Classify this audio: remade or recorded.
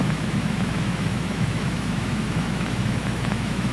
remade